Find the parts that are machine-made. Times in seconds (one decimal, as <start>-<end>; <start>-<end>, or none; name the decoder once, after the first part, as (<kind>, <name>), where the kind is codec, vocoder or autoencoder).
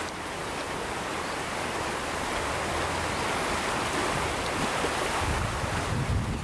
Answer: 4.0-4.7 (vocoder, BigVGAN v2)